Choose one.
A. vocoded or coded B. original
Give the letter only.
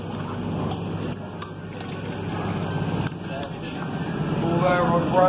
B